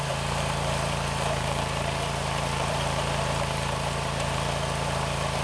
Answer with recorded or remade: remade